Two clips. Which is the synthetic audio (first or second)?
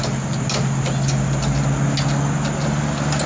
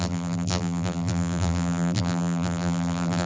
second